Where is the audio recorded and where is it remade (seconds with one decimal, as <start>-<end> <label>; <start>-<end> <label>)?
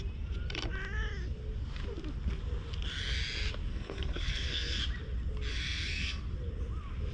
0.0-3.7 recorded; 3.7-4.8 remade; 4.8-5.5 recorded; 5.5-6.2 remade; 6.2-7.1 recorded